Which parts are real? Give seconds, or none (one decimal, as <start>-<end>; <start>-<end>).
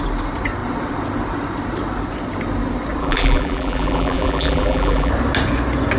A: 0.0-3.0; 5.1-6.0